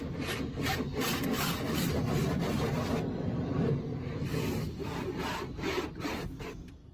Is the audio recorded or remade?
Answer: recorded